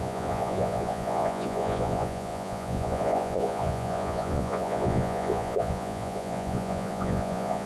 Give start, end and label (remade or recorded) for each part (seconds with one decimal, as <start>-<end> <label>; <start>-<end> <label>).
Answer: 0.0-7.7 remade